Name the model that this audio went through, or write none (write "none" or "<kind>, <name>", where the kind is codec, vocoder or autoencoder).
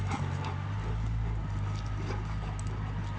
none